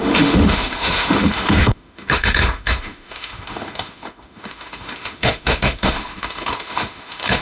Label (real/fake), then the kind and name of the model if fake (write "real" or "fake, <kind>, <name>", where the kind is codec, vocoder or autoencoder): fake, autoencoder, DAC-VAE